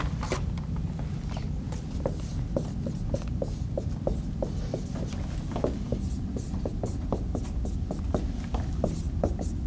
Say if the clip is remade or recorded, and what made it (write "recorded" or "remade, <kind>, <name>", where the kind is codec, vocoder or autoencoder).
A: recorded